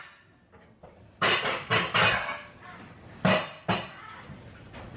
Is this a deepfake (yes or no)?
no